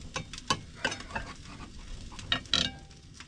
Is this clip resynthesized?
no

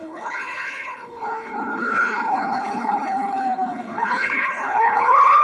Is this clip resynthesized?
yes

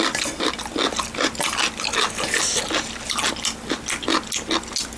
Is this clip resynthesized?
no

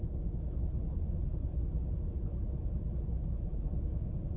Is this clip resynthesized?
no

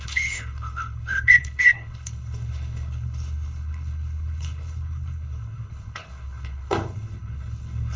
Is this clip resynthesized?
yes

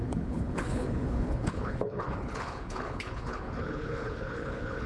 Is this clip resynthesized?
yes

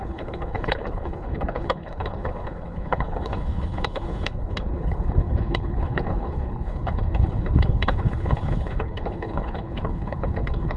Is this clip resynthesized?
yes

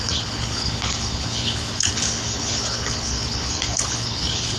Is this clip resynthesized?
yes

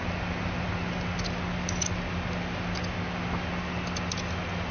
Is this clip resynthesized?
no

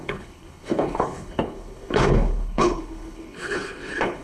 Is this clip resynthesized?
yes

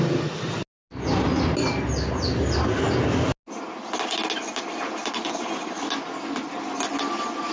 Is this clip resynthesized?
no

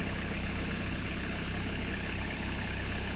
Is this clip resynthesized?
yes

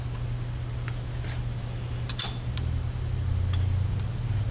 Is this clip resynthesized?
no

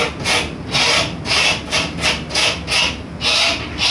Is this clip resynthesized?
no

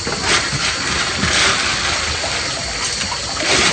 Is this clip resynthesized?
no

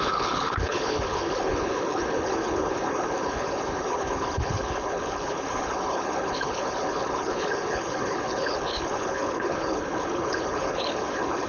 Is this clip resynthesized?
yes